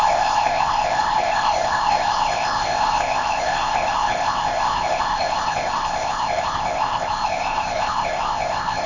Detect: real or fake fake